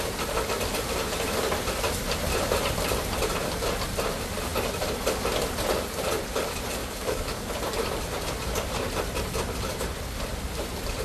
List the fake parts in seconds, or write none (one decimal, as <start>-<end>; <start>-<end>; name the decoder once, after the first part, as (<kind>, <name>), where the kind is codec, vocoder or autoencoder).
6.8-7.5 (codec, DAC)